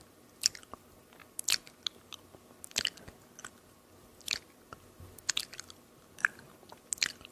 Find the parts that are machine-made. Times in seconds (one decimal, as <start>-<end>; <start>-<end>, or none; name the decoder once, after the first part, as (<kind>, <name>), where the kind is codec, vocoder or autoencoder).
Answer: 6.1-6.7 (vocoder, BigVGAN v2)